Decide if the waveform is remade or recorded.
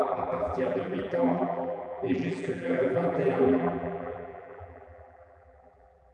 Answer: remade